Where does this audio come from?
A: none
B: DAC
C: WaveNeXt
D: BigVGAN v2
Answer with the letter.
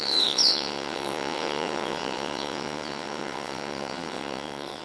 C